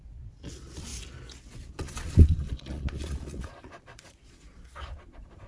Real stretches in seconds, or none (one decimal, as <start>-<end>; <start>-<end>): 0.9-1.4